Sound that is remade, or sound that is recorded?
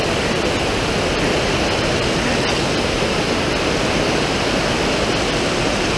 recorded